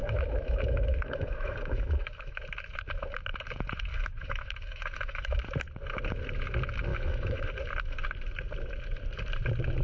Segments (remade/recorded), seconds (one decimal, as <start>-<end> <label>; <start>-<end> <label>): 0.0-2.4 remade; 2.4-3.9 recorded; 3.9-5.4 remade; 5.4-6.9 recorded; 6.9-7.5 remade; 7.5-9.8 recorded